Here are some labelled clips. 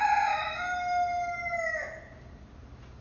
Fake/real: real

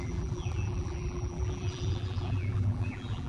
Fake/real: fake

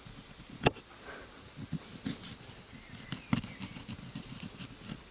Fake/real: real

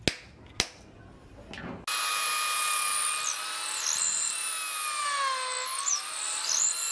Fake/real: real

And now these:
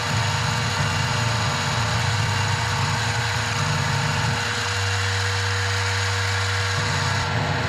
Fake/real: real